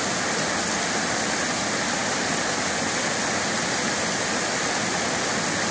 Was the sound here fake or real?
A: real